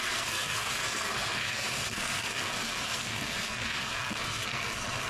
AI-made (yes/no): yes